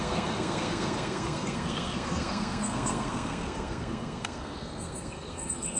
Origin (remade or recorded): remade